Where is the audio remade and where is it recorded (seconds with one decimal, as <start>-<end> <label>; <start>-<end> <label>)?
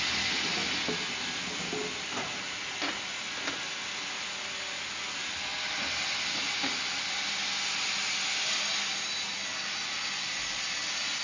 0.0-11.2 recorded